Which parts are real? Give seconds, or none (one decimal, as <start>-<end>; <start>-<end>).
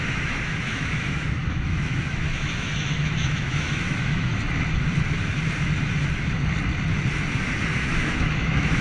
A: 4.3-7.7